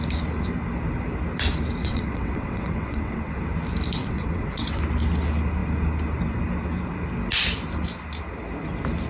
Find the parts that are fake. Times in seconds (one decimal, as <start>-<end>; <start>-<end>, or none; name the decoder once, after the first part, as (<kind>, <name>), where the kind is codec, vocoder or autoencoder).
1.8-3.4 (vocoder, WaveNeXt); 4.0-4.8